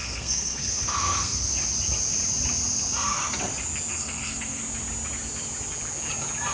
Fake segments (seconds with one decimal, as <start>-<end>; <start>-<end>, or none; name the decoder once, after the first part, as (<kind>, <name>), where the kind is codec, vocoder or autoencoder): 0.0-1.4 (codec, SNAC); 3.9-4.6